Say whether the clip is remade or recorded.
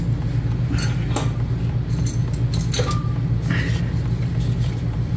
recorded